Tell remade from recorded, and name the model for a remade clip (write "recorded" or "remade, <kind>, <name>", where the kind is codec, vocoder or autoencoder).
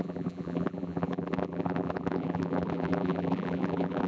remade, vocoder, BigVGAN v2